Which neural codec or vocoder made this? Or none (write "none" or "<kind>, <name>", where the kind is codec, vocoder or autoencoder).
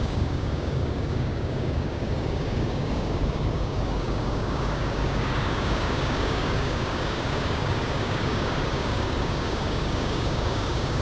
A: codec, DAC